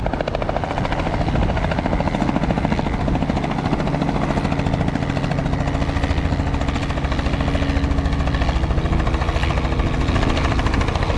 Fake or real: real